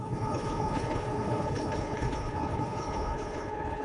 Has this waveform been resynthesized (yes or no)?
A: yes